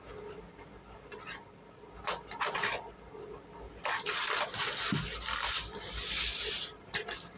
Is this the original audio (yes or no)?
yes